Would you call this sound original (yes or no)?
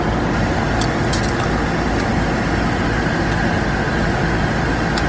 yes